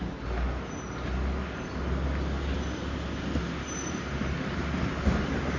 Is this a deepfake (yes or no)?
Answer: no